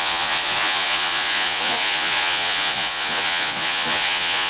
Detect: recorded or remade remade